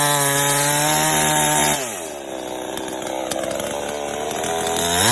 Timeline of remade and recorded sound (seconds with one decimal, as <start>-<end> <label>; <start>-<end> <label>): 0.0-5.1 recorded